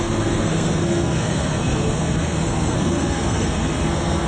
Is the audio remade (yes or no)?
yes